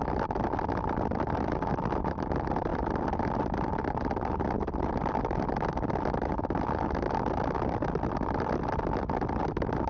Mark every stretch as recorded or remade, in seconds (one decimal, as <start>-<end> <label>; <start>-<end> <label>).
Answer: 0.0-9.9 recorded